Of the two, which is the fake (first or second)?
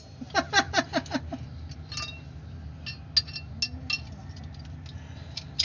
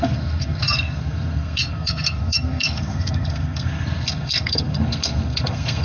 second